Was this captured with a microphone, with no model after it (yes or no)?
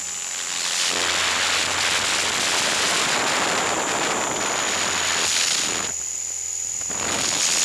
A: yes